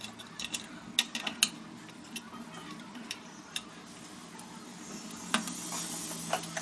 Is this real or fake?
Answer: real